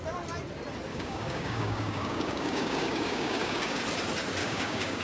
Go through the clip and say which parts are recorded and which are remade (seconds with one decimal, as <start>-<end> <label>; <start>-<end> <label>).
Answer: 0.0-0.9 recorded; 0.9-3.8 remade; 3.8-4.4 recorded; 4.4-5.0 remade

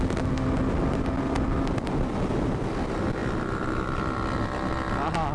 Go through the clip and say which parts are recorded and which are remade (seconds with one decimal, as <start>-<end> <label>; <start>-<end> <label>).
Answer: 0.0-5.3 recorded

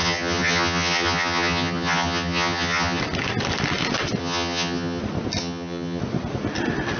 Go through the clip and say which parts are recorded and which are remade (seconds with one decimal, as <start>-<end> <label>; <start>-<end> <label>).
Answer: 0.0-3.0 remade; 3.0-4.2 recorded; 4.2-5.0 remade; 5.0-5.4 recorded; 5.4-6.0 remade; 6.0-7.0 recorded

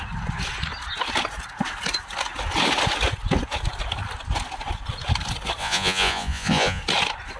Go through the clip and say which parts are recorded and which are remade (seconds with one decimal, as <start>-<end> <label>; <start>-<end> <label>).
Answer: 0.0-5.6 recorded; 5.6-6.8 remade; 6.8-7.4 recorded

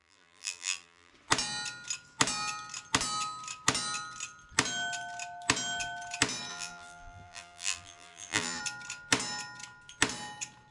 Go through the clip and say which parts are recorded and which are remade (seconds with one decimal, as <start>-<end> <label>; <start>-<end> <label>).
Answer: 0.0-1.1 remade; 1.1-6.5 recorded; 6.5-8.6 remade; 8.6-10.7 recorded